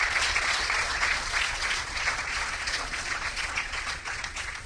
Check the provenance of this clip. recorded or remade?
remade